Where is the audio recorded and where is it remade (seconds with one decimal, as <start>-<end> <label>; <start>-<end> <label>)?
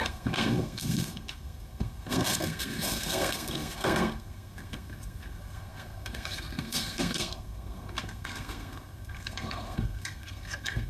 0.0-10.9 remade